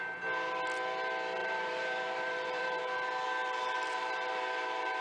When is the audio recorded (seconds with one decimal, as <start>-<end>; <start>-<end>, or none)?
0.0-1.4; 2.8-3.4